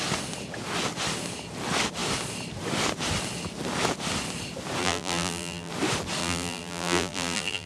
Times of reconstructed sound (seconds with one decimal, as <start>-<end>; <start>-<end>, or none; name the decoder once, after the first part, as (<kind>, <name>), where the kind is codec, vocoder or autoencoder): 4.8-5.7 (vocoder, BigVGAN v2); 6.2-7.7